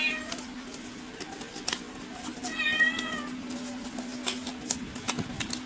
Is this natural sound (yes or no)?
yes